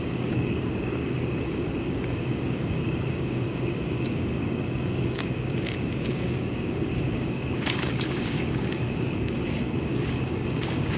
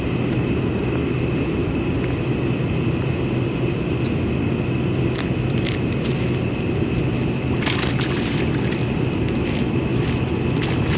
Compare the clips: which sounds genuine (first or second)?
second